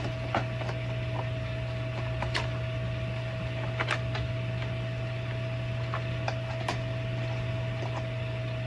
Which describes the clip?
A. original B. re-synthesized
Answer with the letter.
A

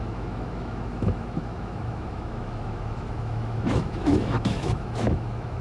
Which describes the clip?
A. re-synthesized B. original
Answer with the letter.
A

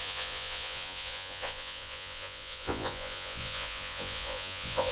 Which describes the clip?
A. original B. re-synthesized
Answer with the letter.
B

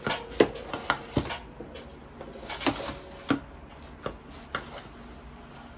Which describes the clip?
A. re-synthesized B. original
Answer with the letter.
B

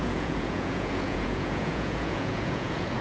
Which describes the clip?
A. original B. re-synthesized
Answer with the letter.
B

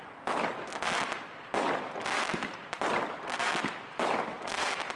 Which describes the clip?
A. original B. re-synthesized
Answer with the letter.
A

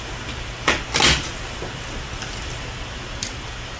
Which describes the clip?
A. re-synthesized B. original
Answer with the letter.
B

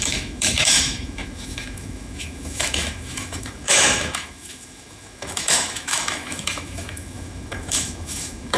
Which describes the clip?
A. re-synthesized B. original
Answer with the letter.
A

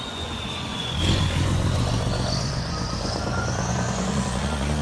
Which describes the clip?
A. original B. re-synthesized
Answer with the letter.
B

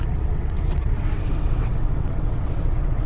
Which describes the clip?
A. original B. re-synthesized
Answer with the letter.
B